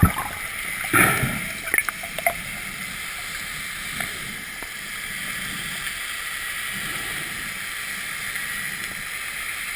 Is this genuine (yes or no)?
yes